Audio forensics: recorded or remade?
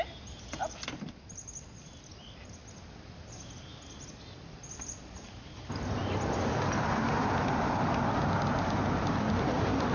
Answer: recorded